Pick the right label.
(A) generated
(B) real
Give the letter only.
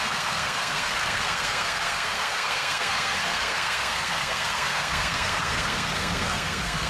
A